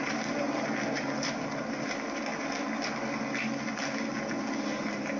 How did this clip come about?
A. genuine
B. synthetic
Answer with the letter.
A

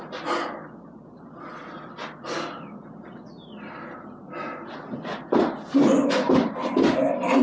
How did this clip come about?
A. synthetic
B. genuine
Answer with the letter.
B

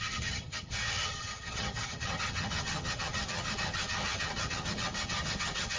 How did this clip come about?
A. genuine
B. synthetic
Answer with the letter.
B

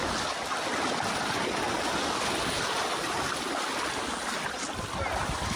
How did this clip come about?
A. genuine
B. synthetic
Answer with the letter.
A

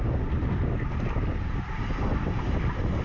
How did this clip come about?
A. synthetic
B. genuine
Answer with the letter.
B